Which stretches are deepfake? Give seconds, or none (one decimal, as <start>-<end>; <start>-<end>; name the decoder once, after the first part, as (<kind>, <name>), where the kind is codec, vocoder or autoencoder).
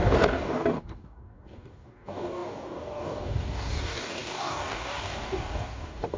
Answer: 0.0-6.2 (codec, DAC)